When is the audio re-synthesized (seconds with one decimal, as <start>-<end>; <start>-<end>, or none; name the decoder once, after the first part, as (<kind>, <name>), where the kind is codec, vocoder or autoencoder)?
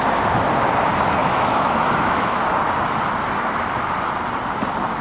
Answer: 1.2-2.4 (autoencoder, DAC-VAE)